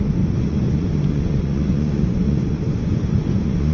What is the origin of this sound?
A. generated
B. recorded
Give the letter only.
A